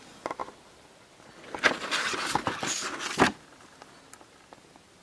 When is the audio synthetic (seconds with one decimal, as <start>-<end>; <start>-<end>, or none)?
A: none